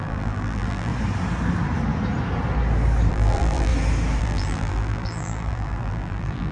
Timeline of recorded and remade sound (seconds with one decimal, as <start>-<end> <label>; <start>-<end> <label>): 0.0-0.9 remade; 0.9-3.1 recorded; 3.1-3.7 remade; 3.7-4.2 recorded; 4.2-6.5 remade